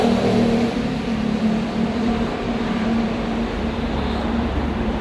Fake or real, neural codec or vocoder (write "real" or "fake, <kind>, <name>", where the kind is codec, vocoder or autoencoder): fake, vocoder, BigVGAN v2